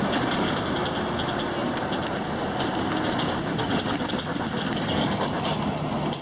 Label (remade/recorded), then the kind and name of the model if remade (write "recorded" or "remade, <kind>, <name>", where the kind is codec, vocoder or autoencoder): recorded